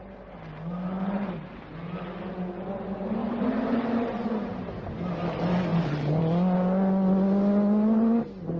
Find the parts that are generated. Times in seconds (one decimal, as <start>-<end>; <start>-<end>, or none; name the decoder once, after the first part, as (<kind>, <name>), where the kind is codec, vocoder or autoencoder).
3.2-4.9 (vocoder, BigVGAN v2); 5.7-6.2